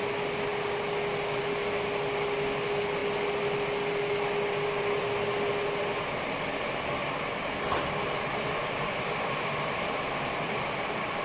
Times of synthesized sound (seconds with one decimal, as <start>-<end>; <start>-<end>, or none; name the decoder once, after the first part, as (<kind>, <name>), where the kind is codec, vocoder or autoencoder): none